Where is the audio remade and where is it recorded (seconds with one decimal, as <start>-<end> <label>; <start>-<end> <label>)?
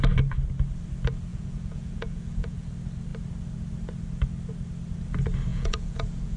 0.0-1.3 recorded; 1.3-2.7 remade; 2.7-5.5 recorded; 5.5-6.4 remade